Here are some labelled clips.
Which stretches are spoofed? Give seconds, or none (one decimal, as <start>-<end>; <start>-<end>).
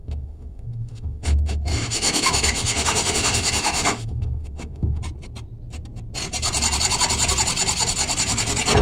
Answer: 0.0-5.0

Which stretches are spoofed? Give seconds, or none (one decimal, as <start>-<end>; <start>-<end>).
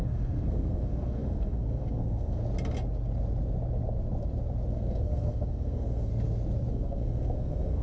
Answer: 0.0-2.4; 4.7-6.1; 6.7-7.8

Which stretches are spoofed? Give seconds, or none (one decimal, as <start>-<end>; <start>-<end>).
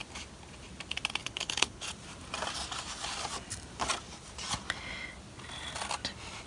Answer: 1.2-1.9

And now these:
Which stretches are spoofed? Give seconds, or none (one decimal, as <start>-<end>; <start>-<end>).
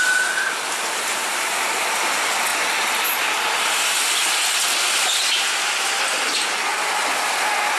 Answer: none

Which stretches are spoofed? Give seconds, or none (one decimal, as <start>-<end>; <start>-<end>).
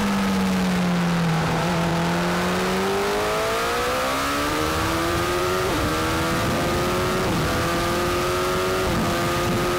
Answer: 1.3-1.9; 4.5-5.9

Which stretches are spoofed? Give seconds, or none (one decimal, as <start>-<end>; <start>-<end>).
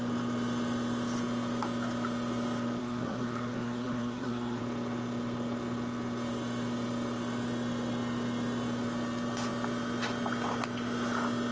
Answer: 2.8-4.6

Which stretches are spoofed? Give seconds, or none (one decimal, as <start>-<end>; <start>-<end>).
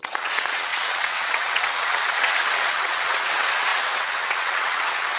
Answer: 0.0-5.2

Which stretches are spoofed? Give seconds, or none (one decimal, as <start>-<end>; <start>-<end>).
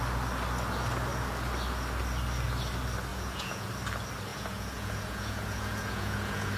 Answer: 3.1-3.7; 4.3-6.6